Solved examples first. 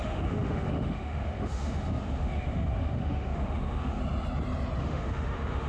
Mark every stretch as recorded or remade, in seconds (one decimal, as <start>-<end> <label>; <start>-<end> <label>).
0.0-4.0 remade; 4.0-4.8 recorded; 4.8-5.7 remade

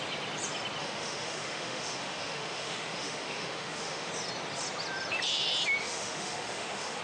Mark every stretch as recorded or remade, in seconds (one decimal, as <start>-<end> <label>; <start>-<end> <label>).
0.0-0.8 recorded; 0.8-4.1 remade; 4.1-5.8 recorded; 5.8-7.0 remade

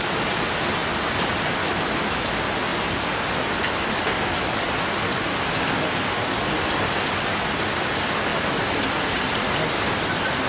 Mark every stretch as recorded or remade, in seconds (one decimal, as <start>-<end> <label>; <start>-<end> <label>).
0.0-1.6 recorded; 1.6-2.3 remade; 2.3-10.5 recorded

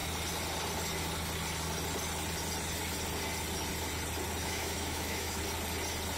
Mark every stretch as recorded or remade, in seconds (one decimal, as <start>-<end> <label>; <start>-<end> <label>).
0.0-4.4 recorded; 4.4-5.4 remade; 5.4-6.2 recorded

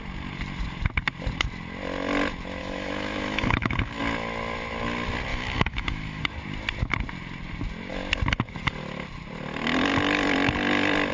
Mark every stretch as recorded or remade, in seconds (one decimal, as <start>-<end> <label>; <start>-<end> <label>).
0.0-2.6 recorded; 2.6-4.0 remade; 4.0-5.3 recorded; 5.3-6.2 remade; 6.2-11.1 recorded

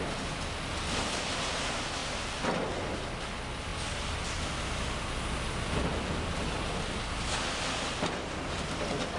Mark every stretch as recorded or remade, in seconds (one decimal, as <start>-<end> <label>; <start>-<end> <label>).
0.0-9.2 recorded

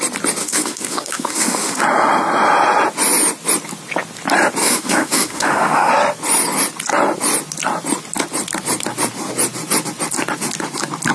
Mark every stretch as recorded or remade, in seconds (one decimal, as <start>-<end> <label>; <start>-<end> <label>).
0.0-0.4 recorded; 0.4-1.8 remade; 1.8-4.6 recorded; 4.6-5.9 remade; 5.9-11.1 recorded

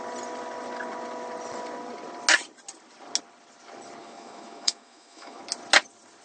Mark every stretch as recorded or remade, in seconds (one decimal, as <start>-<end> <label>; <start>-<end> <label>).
0.0-4.0 recorded; 4.0-5.4 remade; 5.4-6.2 recorded